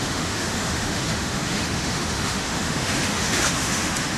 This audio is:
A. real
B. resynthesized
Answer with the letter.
B